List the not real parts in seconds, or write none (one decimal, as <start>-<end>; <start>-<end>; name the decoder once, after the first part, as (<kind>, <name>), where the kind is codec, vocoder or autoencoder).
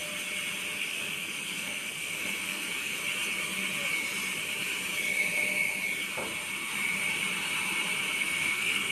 0.8-3.0 (codec, SNAC); 8.2-8.9